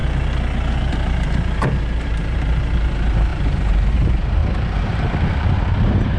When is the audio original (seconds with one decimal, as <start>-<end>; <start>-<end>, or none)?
0.0-0.9